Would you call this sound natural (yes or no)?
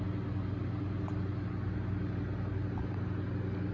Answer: yes